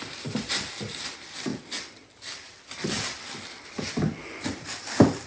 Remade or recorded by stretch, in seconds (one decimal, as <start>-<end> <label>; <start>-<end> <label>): 0.0-5.3 recorded